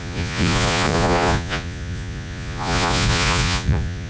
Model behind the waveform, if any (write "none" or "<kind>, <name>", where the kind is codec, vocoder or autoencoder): vocoder, Vocos